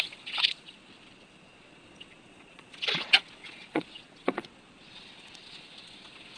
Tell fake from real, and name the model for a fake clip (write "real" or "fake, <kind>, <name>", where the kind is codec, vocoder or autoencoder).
fake, vocoder, Vocos